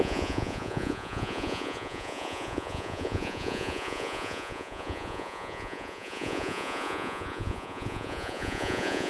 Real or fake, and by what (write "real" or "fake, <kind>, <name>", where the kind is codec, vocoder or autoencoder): fake, vocoder, Vocos